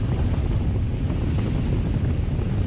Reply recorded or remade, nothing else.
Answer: recorded